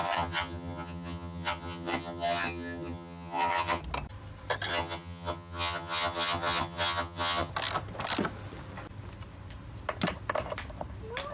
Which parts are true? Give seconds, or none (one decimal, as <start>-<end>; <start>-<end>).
3.8-4.7; 7.5-11.3